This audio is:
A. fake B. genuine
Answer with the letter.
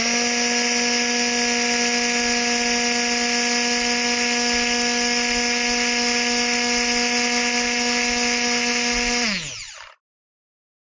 B